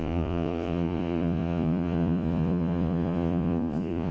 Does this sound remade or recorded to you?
remade